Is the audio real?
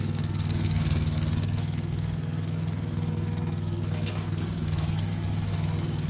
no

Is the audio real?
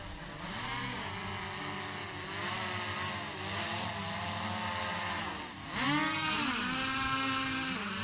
yes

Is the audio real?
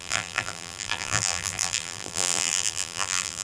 no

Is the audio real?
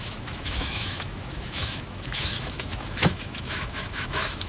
no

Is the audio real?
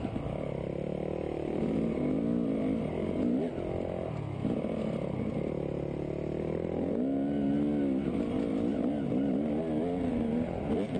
yes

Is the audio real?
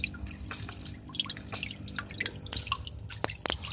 yes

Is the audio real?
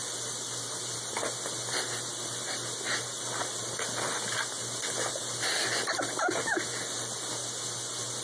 yes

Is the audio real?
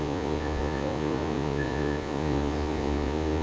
no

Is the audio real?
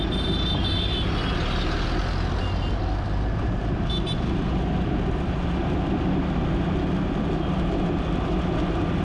yes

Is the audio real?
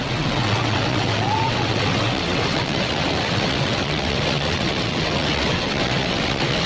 no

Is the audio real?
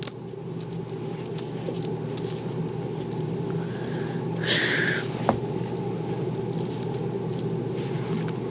yes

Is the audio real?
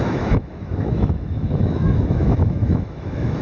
no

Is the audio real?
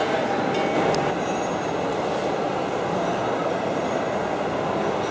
yes